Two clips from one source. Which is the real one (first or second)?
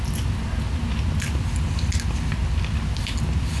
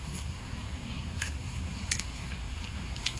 first